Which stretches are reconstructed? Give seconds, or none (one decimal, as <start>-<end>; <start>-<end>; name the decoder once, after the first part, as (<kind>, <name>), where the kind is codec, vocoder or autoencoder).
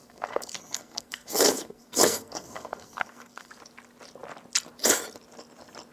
0.0-3.5 (codec, SNAC)